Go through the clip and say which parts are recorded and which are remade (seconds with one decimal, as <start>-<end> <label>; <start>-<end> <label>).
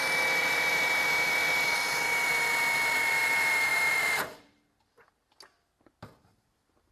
0.0-0.4 recorded; 0.4-2.3 remade; 2.3-3.7 recorded; 3.7-5.4 remade; 5.4-6.9 recorded